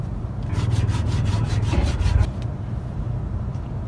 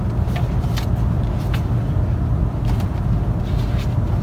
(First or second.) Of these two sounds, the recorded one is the second